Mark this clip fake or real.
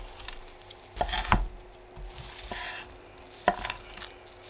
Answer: real